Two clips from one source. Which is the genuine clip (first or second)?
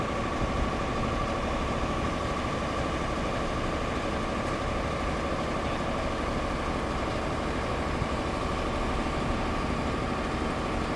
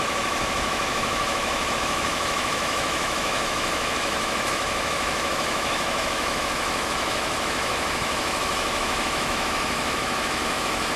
first